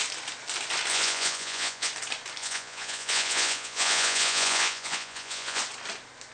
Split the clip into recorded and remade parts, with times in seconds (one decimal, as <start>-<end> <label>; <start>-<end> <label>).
0.0-0.9 recorded; 0.9-1.9 remade; 1.9-2.4 recorded; 2.4-5.6 remade; 5.6-6.3 recorded